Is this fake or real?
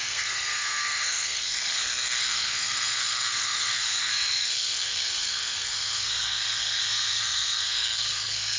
fake